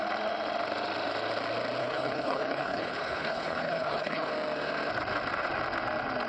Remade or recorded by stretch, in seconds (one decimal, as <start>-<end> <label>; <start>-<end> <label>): 0.0-1.8 recorded; 1.8-4.3 remade; 4.3-6.3 recorded